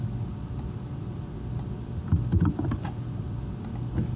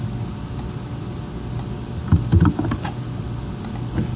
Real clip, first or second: second